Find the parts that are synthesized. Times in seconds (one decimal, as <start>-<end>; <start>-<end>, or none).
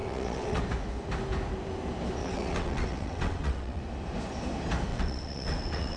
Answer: 0.0-0.6; 2.2-3.8; 4.9-6.0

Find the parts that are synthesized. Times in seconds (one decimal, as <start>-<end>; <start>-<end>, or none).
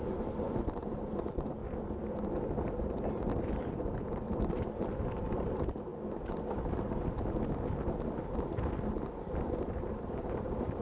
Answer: 0.0-1.6; 2.8-5.9; 9.6-10.8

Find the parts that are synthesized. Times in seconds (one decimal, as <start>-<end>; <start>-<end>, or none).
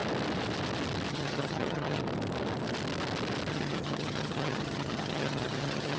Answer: 1.1-2.0; 3.5-6.0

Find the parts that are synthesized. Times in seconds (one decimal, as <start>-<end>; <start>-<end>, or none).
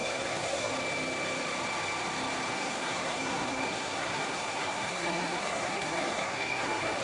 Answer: 0.0-0.7; 2.5-7.0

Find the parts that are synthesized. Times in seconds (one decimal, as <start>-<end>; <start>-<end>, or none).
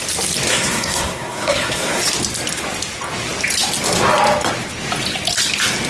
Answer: 0.5-2.0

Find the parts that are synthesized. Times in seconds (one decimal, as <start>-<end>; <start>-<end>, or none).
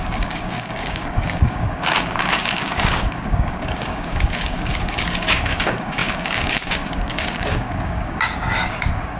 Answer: 0.0-9.2